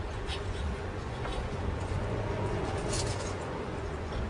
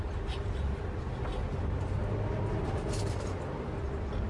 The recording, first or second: second